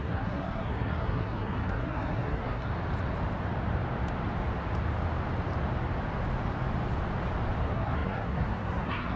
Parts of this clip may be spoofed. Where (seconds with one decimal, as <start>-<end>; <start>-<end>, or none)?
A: 0.0-2.7; 7.6-9.2